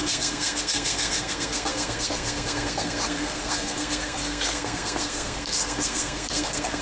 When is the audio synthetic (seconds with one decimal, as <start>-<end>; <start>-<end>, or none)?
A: 0.0-6.8